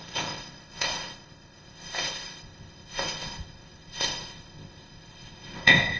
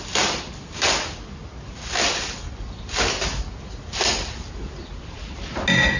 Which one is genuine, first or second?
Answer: second